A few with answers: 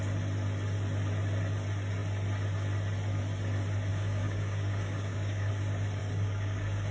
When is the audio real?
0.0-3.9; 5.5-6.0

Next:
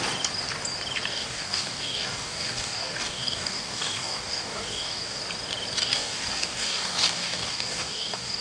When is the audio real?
0.0-1.1; 5.2-5.8

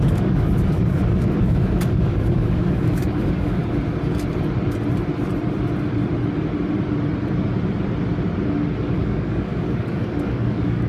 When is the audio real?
3.6-8.8